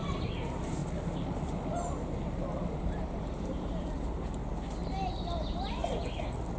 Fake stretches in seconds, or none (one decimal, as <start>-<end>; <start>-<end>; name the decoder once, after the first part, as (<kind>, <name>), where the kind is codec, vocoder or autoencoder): 0.0-0.8 (vocoder, BigVGAN v2); 2.7-4.4; 5.1-6.0